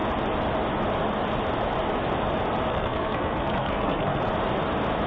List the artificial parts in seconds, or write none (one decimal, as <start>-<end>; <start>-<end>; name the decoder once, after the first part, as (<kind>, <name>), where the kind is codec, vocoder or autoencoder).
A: 2.7-4.2 (codec, SNAC)